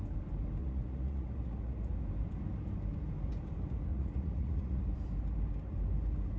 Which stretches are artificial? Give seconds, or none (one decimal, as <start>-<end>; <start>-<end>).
0.6-1.9; 3.9-4.8